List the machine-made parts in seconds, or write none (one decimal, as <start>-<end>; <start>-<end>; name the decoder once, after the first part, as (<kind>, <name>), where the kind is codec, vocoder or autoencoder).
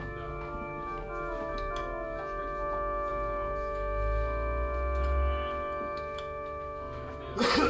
none